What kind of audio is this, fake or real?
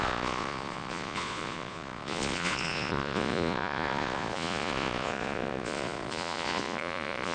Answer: fake